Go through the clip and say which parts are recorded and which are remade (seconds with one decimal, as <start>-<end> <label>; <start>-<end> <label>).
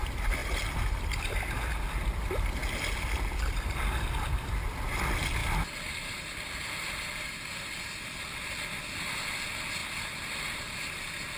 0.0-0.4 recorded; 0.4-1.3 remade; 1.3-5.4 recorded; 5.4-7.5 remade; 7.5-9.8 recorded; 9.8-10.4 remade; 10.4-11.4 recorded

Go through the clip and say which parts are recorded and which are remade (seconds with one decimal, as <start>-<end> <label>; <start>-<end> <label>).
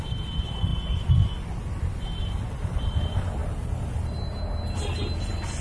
0.0-5.6 recorded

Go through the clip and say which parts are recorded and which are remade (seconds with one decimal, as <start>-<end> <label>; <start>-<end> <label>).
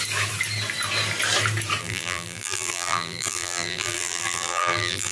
0.0-1.8 recorded; 1.8-5.1 remade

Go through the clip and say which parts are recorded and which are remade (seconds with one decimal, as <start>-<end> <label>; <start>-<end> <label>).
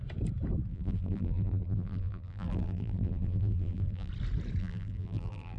0.0-0.7 recorded; 0.7-4.1 remade; 4.1-4.6 recorded; 4.6-5.6 remade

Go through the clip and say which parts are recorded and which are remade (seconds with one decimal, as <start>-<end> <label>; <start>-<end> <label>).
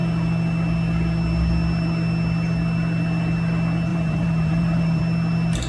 0.0-3.9 recorded; 3.9-5.0 remade; 5.0-5.7 recorded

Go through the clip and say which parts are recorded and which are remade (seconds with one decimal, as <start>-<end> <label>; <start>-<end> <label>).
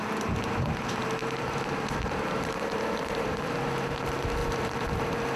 0.0-1.2 recorded; 1.2-3.6 remade; 3.6-4.4 recorded; 4.4-4.9 remade; 4.9-5.4 recorded